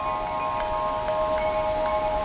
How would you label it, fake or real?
real